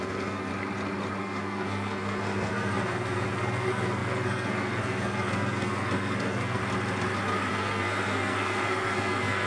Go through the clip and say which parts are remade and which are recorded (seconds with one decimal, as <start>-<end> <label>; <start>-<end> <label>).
0.0-0.5 remade; 0.5-1.2 recorded; 1.2-6.6 remade; 6.6-7.5 recorded; 7.5-9.5 remade